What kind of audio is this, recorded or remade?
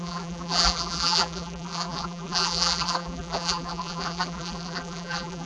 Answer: remade